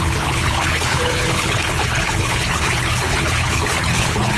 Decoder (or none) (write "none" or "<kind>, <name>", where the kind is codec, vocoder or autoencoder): codec, HILCodec